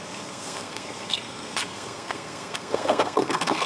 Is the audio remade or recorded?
remade